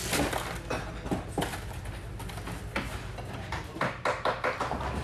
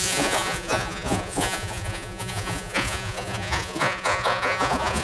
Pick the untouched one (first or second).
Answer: first